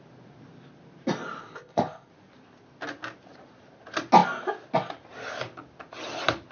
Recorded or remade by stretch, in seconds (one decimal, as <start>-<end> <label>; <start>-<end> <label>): 0.0-1.4 recorded; 1.4-2.1 remade; 2.1-6.5 recorded